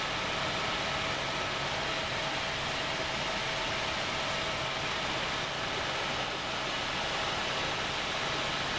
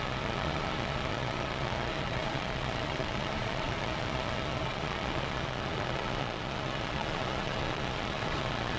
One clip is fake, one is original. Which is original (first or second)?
first